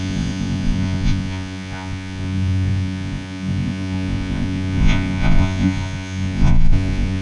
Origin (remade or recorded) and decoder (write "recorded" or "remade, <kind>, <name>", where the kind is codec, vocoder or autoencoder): remade, vocoder, Vocos